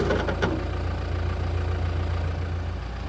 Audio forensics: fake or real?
real